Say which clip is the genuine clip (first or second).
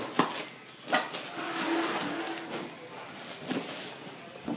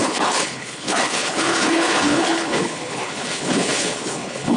first